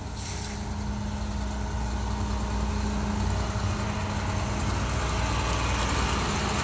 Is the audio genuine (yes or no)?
yes